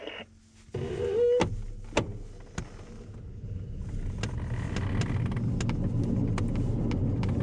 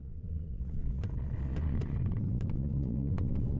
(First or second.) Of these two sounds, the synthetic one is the second